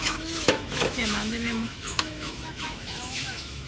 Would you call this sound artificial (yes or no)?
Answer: yes